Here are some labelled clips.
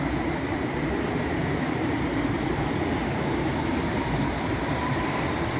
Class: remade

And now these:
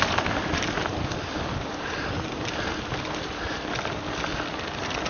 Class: remade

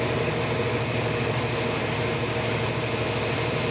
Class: recorded